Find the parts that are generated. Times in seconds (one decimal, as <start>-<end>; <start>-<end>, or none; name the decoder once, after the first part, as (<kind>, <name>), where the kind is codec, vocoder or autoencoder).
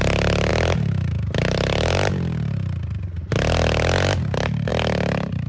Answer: none